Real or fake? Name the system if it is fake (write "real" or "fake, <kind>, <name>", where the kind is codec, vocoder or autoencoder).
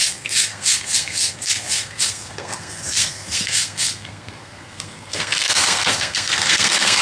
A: fake, codec, SNAC